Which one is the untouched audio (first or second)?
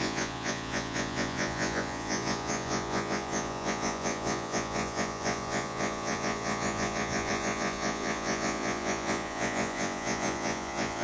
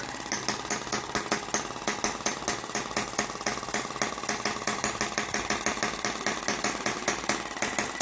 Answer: second